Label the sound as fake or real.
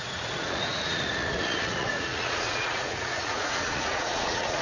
fake